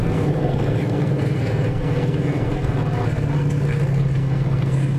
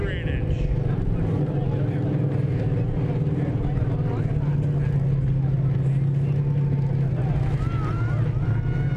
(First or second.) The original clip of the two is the second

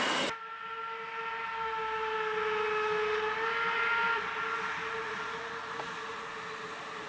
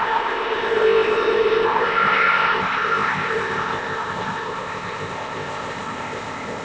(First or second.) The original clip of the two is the first